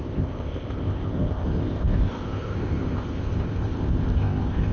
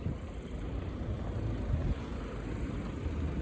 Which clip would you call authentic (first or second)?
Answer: second